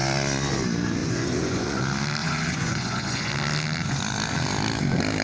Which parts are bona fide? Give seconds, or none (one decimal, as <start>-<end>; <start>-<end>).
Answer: 0.0-1.0; 1.8-2.2; 3.3-5.2